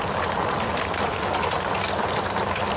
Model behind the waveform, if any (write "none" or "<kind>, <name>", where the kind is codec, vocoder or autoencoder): none